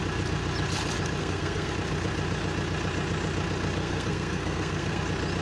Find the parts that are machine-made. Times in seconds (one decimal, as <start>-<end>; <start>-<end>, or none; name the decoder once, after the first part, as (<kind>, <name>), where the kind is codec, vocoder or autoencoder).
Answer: 1.2-1.7 (codec, SNAC); 3.8-5.0